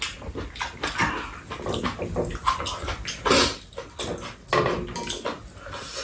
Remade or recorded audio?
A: recorded